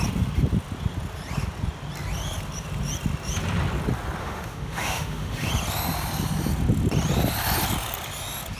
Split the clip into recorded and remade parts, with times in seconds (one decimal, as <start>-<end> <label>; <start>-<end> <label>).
0.0-4.2 recorded; 4.2-5.5 remade; 5.5-8.6 recorded